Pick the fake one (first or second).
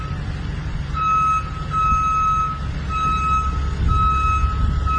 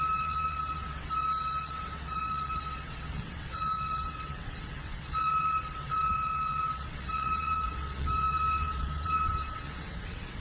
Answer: second